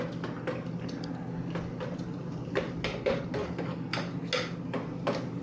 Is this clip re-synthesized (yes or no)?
no